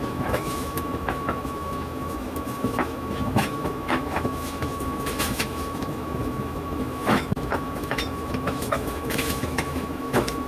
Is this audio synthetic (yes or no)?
yes